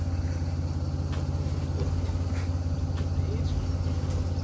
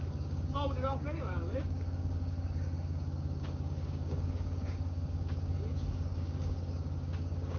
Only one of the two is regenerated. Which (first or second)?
second